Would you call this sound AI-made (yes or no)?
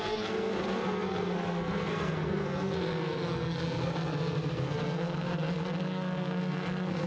yes